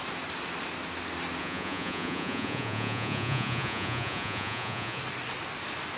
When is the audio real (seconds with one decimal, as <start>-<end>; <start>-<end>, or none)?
0.0-1.4; 5.0-6.0

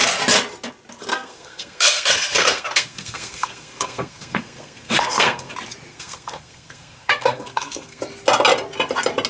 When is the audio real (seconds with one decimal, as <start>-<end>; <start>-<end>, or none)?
0.0-1.1; 5.5-5.9; 8.0-9.3

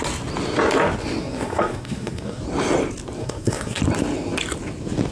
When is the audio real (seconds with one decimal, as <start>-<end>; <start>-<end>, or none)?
0.0-1.2; 2.4-3.2; 3.8-5.1

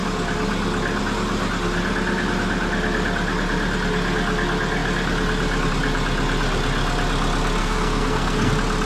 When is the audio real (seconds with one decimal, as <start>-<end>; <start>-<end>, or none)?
0.0-7.6; 8.5-8.9

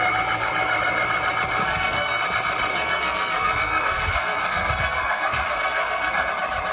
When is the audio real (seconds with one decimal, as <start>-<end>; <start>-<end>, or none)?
0.0-1.6; 2.2-2.7; 6.3-6.7

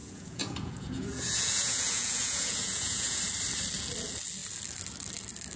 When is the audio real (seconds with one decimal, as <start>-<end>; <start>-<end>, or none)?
3.2-5.6

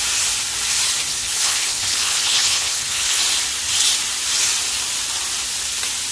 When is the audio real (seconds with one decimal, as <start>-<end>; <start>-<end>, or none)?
0.0-1.1; 3.2-6.1

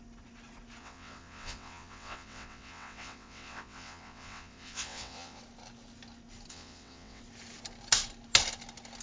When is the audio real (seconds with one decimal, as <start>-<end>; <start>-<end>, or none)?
0.0-0.8; 5.4-6.5; 7.2-9.0